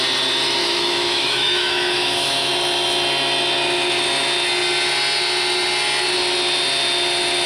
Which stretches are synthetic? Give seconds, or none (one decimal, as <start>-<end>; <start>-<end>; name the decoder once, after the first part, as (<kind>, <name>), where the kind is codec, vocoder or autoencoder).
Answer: 0.6-2.5 (autoencoder, DAC-VAE)